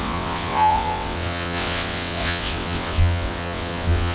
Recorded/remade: remade